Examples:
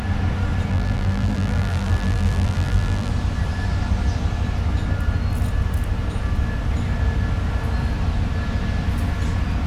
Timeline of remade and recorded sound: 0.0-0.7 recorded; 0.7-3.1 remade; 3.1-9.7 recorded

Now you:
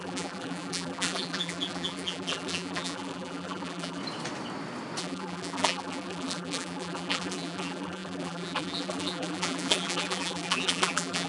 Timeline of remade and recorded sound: 0.0-4.0 remade; 4.0-5.0 recorded; 5.0-11.3 remade

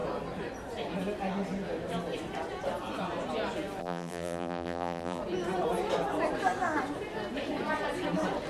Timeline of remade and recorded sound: 0.0-3.8 recorded; 3.8-5.2 remade; 5.2-8.5 recorded

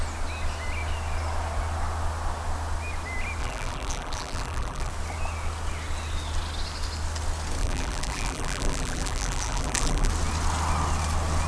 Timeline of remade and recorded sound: 0.0-3.4 recorded; 3.4-4.9 remade; 4.9-7.6 recorded; 7.6-10.1 remade; 10.1-11.5 recorded